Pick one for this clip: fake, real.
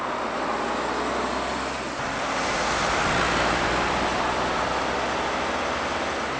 real